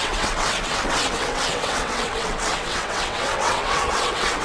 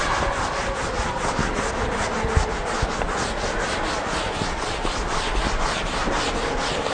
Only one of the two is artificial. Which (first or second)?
first